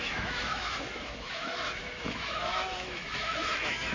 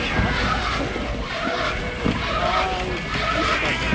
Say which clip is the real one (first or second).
second